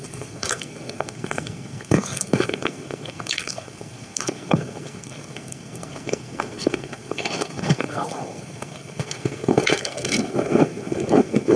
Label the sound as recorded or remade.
remade